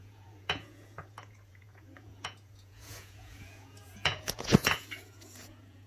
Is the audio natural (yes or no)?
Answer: no